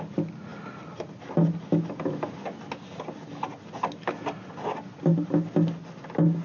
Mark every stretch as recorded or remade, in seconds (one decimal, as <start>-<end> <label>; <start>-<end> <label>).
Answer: 0.0-6.4 recorded

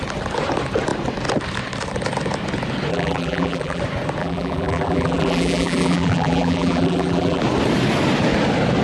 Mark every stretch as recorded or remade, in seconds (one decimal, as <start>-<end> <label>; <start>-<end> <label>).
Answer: 0.0-2.9 recorded; 2.9-3.8 remade; 3.8-4.2 recorded; 4.2-7.4 remade; 7.4-8.8 recorded

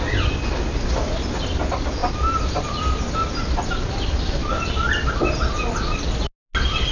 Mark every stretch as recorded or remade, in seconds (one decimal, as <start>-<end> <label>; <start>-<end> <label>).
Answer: 0.0-6.9 recorded

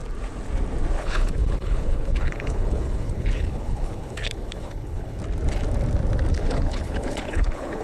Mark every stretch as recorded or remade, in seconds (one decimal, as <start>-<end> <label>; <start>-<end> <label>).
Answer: 0.0-1.0 recorded; 1.0-5.2 remade; 5.2-6.3 recorded; 6.3-7.8 remade

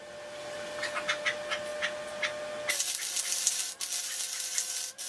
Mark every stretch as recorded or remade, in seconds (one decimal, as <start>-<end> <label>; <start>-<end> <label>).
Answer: 0.0-5.1 recorded

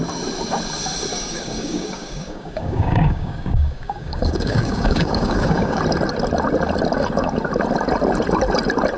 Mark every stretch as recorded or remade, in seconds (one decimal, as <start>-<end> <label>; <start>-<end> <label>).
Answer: 0.0-1.1 recorded; 1.1-5.8 remade; 5.8-9.0 recorded